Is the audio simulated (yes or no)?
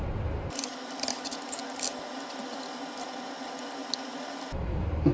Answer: no